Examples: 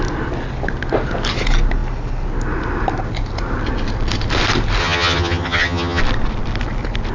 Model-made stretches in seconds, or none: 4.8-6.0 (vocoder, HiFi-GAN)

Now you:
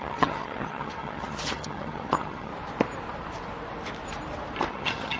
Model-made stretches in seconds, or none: 0.0-2.5 (vocoder, HiFi-GAN); 4.7-5.2

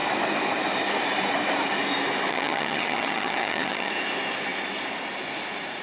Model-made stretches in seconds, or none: 2.3-3.9 (vocoder, HiFi-GAN)

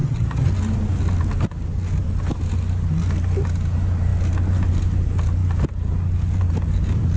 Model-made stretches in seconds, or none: 0.0-0.5 (vocoder, HiFi-GAN)

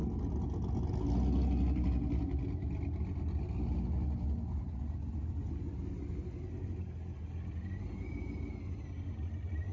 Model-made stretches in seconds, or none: none

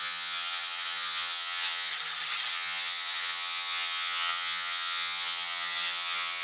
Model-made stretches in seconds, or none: 0.0-1.9 (vocoder, HiFi-GAN); 2.5-6.4